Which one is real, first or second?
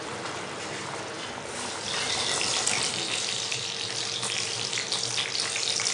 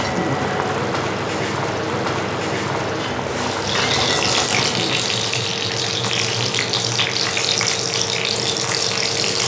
second